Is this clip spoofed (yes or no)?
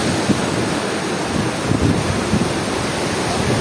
yes